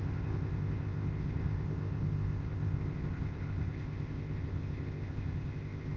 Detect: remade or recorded remade